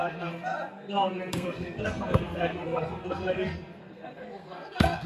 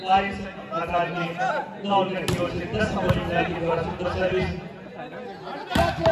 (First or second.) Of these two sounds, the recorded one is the second